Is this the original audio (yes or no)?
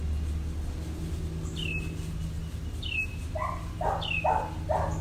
yes